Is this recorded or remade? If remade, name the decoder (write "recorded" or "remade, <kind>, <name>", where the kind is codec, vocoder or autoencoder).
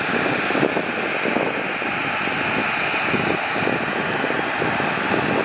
recorded